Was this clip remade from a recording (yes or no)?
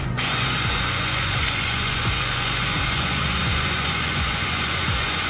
yes